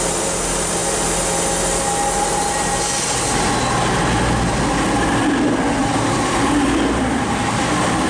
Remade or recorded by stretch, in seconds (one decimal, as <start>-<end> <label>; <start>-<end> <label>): 0.0-5.8 recorded; 5.8-7.4 remade; 7.4-8.1 recorded